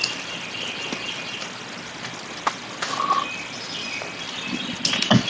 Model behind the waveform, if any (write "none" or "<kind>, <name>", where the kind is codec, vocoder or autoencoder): none